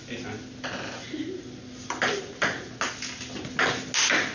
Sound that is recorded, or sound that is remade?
recorded